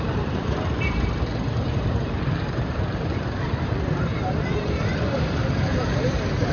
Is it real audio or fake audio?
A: fake